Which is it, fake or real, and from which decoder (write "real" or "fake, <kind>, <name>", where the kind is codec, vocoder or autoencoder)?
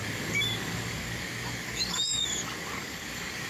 fake, codec, DAC